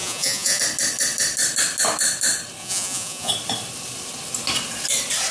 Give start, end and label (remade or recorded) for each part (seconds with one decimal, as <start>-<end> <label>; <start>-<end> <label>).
0.0-0.6 remade; 0.6-2.6 recorded; 2.6-3.3 remade; 3.3-5.3 recorded